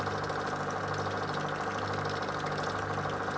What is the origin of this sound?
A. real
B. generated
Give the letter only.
A